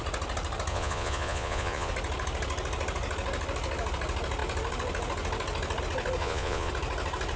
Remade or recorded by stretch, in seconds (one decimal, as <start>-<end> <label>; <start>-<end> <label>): 0.0-0.7 recorded; 0.7-1.9 remade; 1.9-6.2 recorded; 6.2-6.7 remade; 6.7-7.4 recorded